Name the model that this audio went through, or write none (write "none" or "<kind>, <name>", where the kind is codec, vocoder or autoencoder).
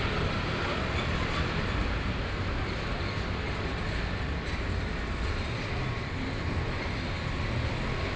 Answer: none